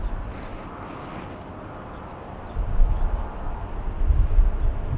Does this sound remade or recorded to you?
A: recorded